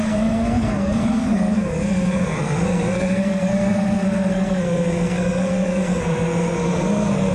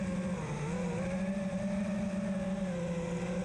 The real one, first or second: second